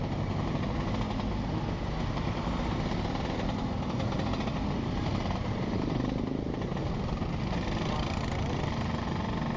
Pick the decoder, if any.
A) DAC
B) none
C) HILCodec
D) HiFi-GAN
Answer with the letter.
B